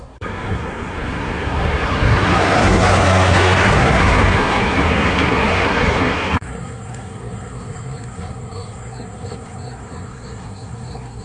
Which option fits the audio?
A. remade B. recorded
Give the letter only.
A